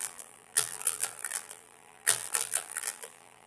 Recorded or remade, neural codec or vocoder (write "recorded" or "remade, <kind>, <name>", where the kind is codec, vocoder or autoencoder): remade, vocoder, BigVGAN v2